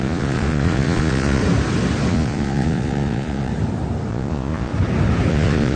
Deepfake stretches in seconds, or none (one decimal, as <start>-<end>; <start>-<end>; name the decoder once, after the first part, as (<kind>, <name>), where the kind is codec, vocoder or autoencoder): 0.0-1.4 (vocoder, Vocos); 2.1-3.5; 4.1-4.7; 5.3-5.8